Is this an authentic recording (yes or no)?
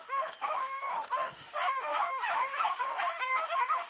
no